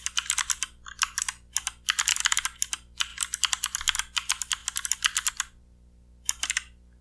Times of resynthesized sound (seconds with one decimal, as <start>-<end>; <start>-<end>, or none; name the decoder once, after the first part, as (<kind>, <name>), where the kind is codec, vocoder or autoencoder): none

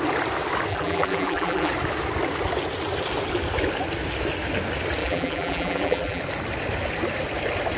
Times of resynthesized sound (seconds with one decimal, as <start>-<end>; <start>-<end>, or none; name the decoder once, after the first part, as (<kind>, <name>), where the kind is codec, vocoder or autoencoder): 0.7-1.7 (vocoder, BigVGAN v2); 5.0-6.2

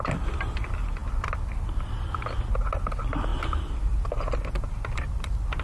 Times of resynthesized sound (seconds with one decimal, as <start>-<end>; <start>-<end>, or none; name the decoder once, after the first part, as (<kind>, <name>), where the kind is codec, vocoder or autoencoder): none